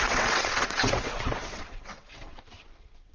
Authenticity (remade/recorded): remade